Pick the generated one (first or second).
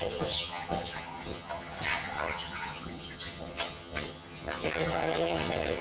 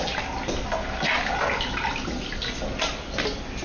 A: first